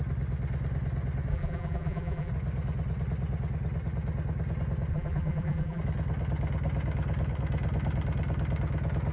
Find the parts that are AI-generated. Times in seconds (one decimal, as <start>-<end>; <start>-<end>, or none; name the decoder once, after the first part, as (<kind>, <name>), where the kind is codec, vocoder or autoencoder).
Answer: 1.3-2.3 (vocoder, BigVGAN v2); 4.9-5.8